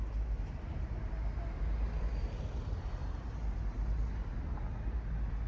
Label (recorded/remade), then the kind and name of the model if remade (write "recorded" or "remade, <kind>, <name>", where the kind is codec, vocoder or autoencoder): recorded